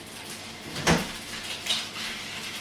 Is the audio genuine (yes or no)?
yes